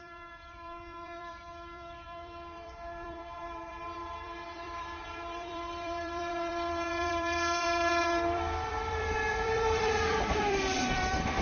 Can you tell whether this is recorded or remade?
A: remade